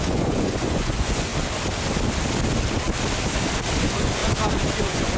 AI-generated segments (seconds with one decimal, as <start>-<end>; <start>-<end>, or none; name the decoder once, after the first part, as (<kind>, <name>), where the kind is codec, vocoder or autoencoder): 0.0-1.3 (vocoder, Vocos); 3.8-4.2; 4.8-5.2